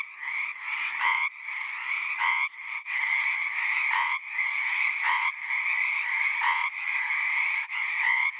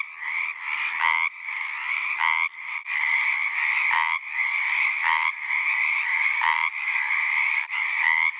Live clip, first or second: second